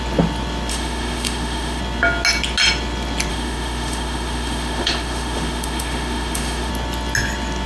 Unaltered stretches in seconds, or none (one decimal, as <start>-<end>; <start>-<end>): 0.0-0.7; 1.8-3.3; 6.7-7.7